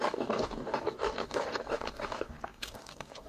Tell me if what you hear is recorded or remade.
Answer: remade